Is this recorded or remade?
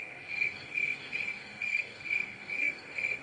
remade